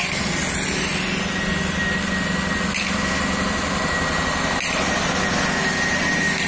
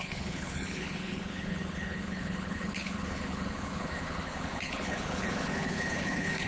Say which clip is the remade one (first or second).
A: second